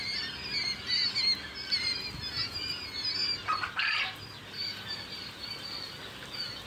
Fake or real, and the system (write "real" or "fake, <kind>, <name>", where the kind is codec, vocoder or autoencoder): real